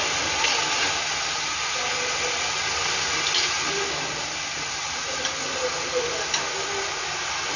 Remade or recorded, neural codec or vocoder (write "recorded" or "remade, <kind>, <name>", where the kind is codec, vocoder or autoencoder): recorded